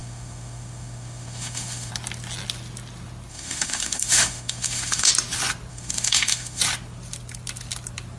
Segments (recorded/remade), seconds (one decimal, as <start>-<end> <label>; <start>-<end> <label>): 0.0-1.9 remade; 1.9-3.3 recorded; 3.3-5.1 remade; 5.1-5.7 recorded; 5.7-6.6 remade; 6.6-8.2 recorded